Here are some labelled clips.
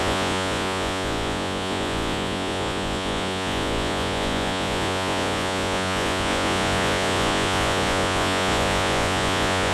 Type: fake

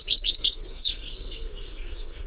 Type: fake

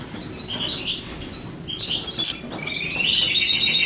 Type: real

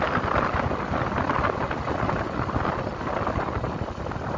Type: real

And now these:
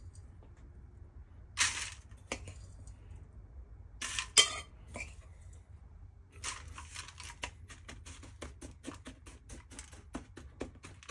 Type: real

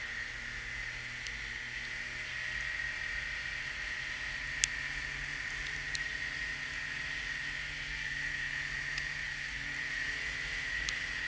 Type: real